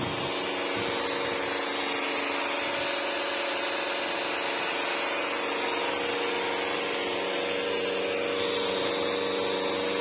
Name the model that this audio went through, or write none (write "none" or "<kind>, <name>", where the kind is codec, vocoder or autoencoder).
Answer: none